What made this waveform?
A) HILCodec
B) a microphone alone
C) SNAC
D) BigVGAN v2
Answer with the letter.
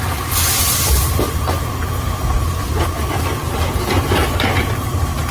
B